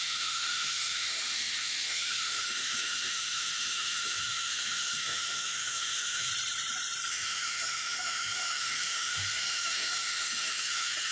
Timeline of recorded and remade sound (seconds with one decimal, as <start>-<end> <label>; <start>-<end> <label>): 0.0-6.3 remade; 6.3-7.1 recorded; 7.1-11.1 remade